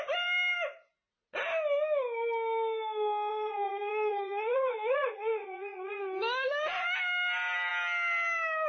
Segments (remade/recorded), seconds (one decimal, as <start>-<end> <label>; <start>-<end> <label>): 0.0-3.3 recorded; 3.3-6.0 remade; 6.0-8.7 recorded